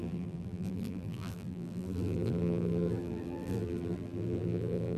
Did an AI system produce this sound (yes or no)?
yes